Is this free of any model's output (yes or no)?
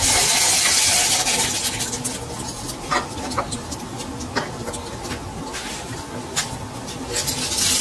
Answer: yes